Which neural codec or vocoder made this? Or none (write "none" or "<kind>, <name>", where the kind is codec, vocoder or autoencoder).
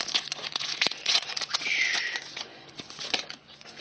vocoder, Vocos